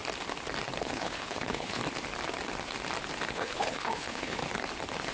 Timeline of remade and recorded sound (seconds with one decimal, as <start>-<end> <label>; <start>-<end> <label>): 0.0-0.8 recorded; 0.8-1.8 remade; 1.8-3.3 recorded; 3.3-4.4 remade; 4.4-5.1 recorded